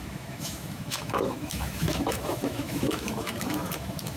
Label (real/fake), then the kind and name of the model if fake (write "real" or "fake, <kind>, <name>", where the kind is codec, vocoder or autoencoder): fake, autoencoder, DAC-VAE